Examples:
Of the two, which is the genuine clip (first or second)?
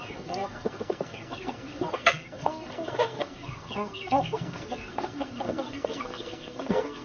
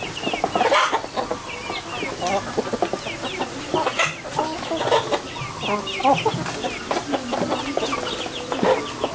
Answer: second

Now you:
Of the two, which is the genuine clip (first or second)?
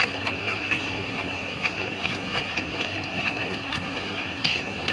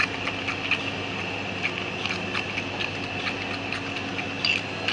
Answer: second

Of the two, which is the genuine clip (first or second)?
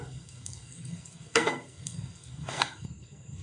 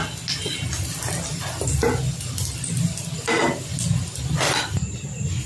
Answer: second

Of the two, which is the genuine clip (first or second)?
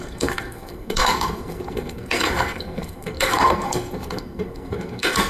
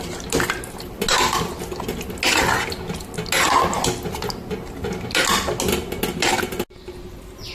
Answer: second